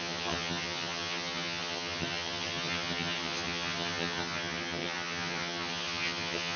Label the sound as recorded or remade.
remade